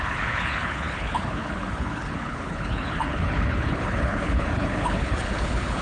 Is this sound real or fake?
fake